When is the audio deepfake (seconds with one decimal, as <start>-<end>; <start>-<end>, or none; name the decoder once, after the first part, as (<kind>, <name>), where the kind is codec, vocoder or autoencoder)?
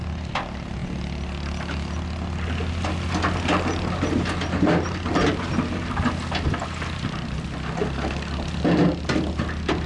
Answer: none